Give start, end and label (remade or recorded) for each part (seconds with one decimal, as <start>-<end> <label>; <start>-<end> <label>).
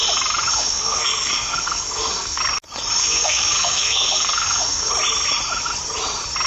0.0-0.5 recorded; 0.5-2.4 remade; 2.4-3.0 recorded; 3.0-4.9 remade; 4.9-6.5 recorded